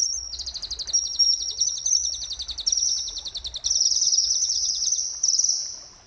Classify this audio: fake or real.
real